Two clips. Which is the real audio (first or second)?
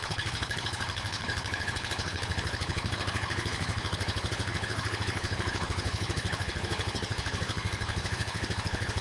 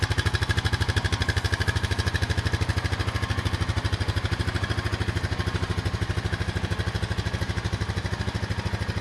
second